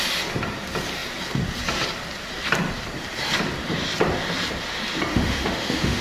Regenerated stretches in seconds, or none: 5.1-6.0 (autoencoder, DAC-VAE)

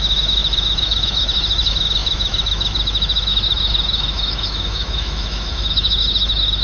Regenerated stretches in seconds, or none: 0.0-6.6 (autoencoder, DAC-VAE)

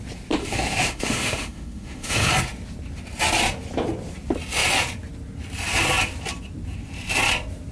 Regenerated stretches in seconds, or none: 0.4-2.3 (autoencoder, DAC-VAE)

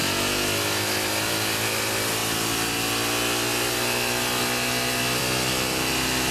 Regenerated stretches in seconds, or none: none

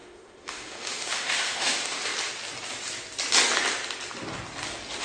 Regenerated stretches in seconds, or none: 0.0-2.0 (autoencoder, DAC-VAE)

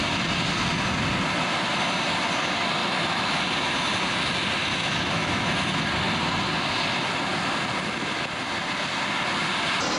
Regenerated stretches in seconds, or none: 2.8-3.4 (autoencoder, DAC-VAE); 4.7-5.8